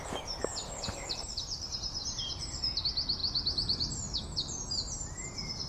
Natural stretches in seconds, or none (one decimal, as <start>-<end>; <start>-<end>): none